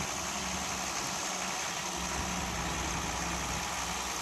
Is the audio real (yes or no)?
yes